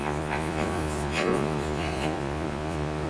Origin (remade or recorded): remade